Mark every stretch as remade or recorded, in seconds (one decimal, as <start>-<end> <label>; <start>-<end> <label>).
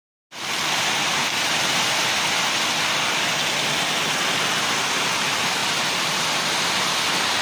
0.0-5.6 recorded; 5.6-6.3 remade; 6.3-7.4 recorded